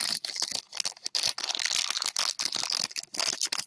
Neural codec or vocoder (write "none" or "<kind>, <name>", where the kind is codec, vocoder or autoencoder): none